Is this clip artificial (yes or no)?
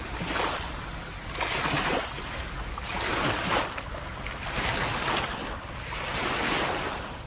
no